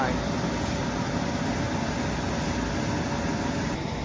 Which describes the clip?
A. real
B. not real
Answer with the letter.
A